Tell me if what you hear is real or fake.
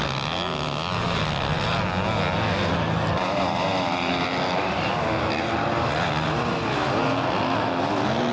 real